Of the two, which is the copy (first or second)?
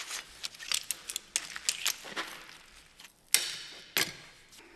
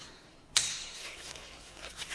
second